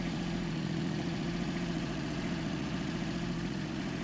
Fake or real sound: fake